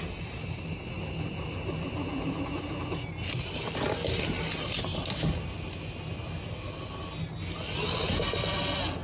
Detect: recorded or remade recorded